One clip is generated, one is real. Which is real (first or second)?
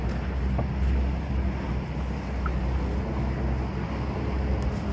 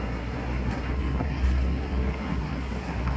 first